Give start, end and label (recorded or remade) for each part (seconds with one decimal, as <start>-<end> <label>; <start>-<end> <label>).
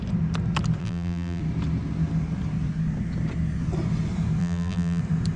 0.0-0.8 recorded; 0.8-1.4 remade; 1.4-4.4 recorded; 4.4-5.0 remade; 5.0-5.4 recorded